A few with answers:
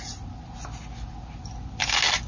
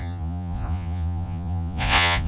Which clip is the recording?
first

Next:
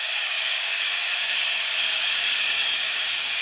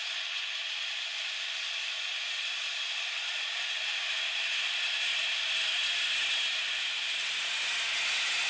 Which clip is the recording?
second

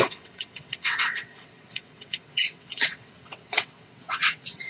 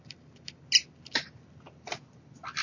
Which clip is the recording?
second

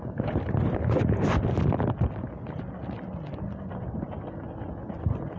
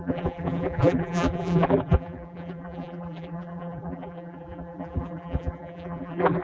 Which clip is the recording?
first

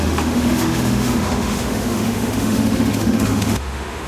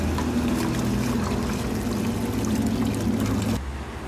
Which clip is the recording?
second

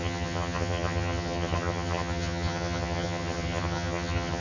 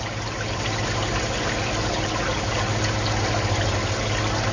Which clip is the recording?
second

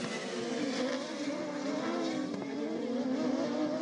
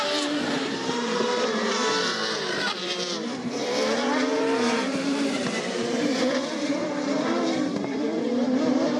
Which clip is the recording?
first